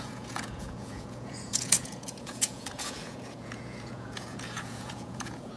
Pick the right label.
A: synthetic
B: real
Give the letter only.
A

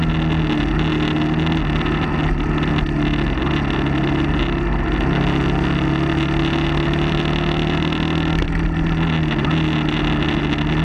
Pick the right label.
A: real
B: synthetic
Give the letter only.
A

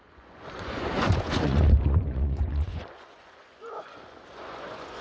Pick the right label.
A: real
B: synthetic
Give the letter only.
B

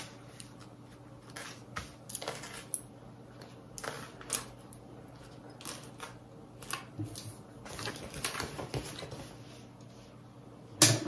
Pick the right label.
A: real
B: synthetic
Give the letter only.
A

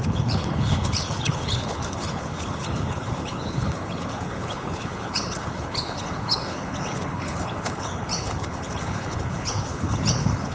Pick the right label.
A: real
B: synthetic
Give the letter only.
B